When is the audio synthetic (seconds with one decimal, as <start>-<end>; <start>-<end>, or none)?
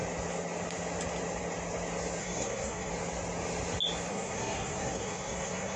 2.2-2.9; 4.1-5.8